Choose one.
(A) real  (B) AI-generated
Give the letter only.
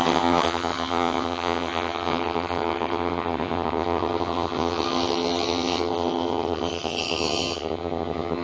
B